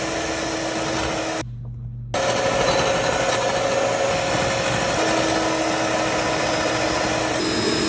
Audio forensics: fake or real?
real